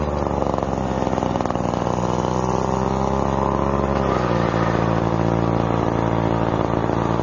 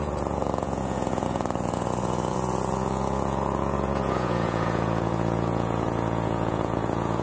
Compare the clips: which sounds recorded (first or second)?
first